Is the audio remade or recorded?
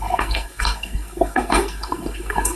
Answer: remade